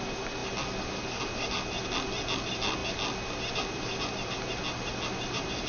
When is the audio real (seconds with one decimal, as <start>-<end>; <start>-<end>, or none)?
0.0-5.7